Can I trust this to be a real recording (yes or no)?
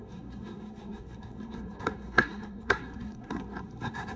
no